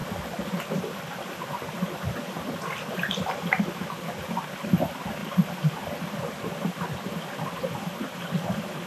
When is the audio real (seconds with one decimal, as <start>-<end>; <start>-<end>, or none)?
3.2-8.9